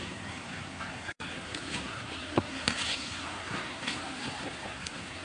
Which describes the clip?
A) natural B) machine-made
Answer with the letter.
B